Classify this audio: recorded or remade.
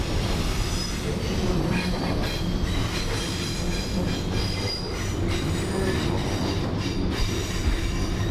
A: recorded